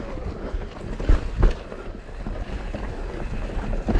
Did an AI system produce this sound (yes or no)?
no